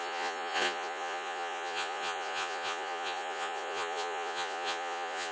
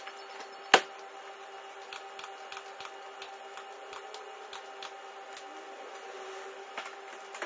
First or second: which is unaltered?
second